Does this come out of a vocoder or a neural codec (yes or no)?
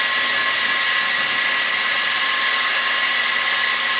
no